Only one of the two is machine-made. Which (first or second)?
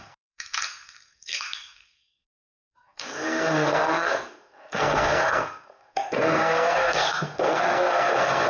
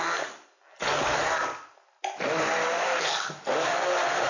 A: first